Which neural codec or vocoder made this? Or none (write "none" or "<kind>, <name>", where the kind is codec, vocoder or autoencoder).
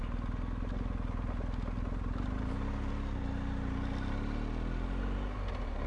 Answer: none